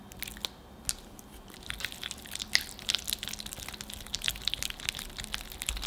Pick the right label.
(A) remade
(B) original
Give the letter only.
B